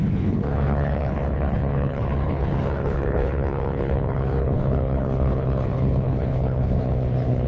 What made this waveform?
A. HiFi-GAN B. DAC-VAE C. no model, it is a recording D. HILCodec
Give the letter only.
D